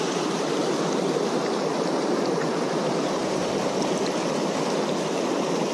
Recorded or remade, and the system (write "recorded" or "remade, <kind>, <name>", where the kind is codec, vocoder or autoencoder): remade, vocoder, BigVGAN v2